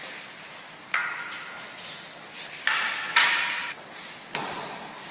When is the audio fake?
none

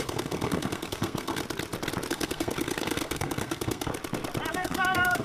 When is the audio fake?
0.0-1.4; 2.1-3.9; 4.5-5.2

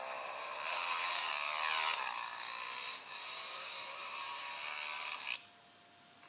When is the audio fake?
2.8-4.5

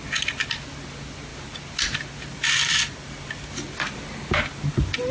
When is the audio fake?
none

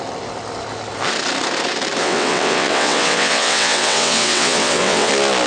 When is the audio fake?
2.0-5.1

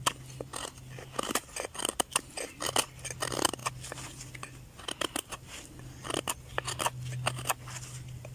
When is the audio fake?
none